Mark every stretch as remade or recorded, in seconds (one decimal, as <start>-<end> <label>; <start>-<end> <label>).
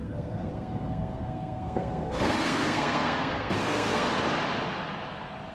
0.0-4.1 remade; 4.1-5.5 recorded